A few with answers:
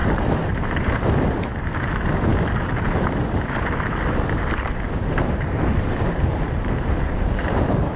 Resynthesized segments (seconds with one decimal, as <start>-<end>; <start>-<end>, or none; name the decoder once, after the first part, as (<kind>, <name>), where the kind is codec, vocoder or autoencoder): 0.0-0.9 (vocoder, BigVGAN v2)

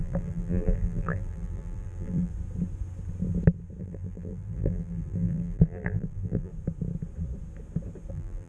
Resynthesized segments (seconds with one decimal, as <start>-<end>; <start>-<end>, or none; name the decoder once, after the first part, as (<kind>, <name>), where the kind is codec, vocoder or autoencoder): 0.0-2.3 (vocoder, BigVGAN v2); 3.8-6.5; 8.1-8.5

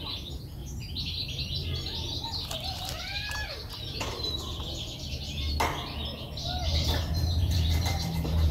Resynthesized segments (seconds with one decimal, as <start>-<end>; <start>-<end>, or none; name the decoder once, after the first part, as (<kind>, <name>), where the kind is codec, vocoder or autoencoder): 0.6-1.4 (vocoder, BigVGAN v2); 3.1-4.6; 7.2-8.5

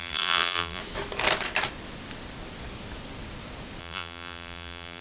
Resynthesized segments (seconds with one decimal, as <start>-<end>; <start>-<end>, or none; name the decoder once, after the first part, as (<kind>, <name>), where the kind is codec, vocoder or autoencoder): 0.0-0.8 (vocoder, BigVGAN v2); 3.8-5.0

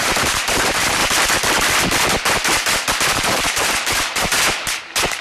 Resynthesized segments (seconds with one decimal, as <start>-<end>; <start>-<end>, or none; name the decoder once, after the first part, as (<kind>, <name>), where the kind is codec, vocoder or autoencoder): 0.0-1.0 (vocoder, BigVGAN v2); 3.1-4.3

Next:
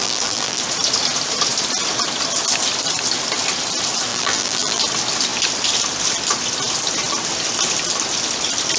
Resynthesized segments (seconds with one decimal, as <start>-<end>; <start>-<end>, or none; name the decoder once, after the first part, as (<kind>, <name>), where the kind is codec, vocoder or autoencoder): 0.0-0.6 (vocoder, BigVGAN v2); 4.1-4.8

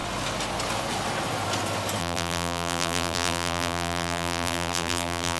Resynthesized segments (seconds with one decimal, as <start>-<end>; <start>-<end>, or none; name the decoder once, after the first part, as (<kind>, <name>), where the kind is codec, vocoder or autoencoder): 2.0-5.4 (vocoder, BigVGAN v2)

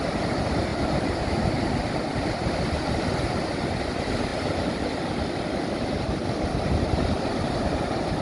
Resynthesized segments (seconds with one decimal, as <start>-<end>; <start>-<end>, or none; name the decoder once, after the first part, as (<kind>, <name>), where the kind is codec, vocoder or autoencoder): 0.7-1.7 (vocoder, BigVGAN v2); 2.1-3.1; 4.3-6.4